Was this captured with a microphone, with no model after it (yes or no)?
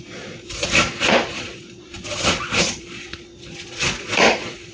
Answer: no